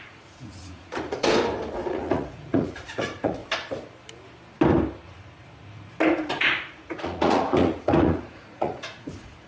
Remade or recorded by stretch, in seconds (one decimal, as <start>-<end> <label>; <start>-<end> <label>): 0.0-1.3 remade; 1.3-1.9 recorded; 1.9-3.4 remade; 3.4-6.1 recorded; 6.1-9.5 remade